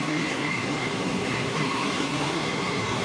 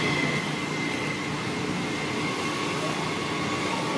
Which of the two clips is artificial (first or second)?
first